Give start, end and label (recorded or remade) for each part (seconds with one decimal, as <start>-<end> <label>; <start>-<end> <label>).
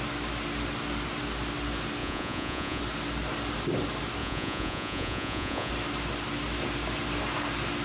0.0-2.0 recorded; 2.0-2.8 remade; 2.8-4.2 recorded; 4.2-5.7 remade; 5.7-7.8 recorded